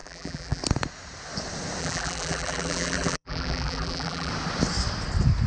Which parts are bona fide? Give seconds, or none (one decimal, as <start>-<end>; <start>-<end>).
0.6-1.8; 4.3-5.5